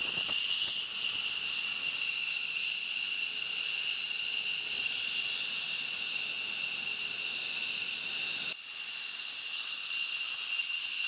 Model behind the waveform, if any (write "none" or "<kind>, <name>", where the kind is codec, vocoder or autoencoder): none